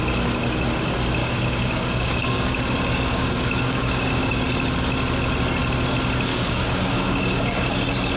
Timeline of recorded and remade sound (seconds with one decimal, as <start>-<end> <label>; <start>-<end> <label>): 0.0-1.2 recorded; 1.2-4.4 remade; 4.4-6.3 recorded; 6.3-7.6 remade; 7.6-8.2 recorded